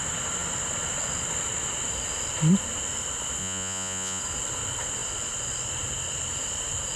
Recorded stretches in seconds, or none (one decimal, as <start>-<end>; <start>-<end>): 0.0-3.4; 4.2-7.0